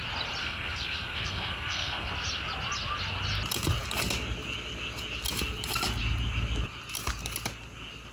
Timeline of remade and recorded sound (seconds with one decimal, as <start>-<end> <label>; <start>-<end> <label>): 0.0-0.4 recorded; 0.4-2.1 remade; 2.1-8.1 recorded